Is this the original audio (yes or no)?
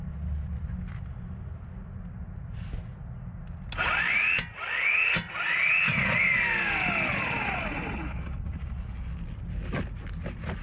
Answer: yes